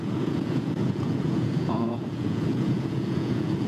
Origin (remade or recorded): remade